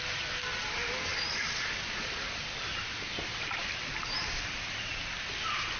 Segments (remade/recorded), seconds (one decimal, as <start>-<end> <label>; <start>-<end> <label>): 0.0-5.8 recorded